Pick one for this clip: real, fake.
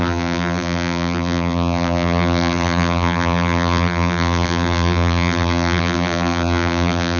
fake